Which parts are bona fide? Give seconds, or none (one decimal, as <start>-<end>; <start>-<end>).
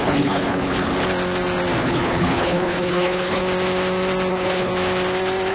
0.9-1.8; 3.4-4.3; 4.7-5.5